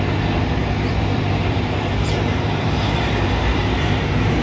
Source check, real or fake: fake